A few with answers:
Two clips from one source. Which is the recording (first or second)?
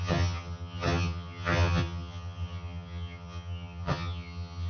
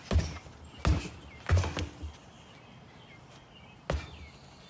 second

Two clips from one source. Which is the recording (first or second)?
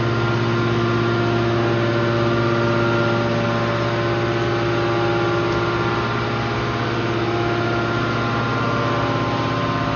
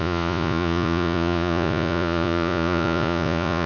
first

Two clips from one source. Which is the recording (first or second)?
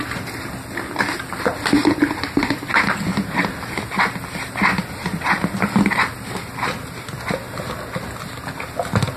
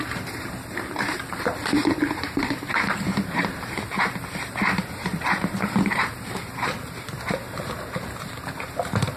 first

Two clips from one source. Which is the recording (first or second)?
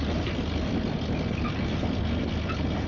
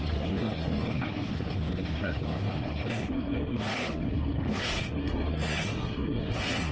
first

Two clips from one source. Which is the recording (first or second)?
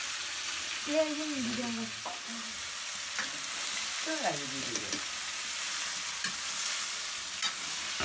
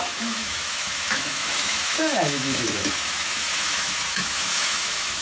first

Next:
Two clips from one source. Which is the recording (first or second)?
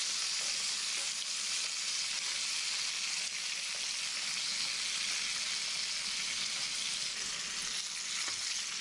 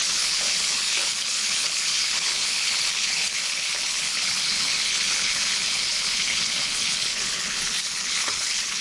first